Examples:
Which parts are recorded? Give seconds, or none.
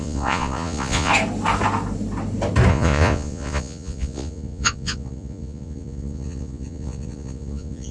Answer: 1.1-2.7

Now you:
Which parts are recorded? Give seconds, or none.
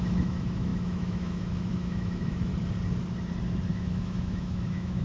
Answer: 2.5-3.7